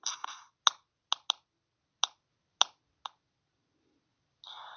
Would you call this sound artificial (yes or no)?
no